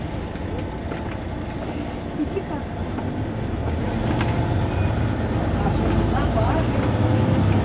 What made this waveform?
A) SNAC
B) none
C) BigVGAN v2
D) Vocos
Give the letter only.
B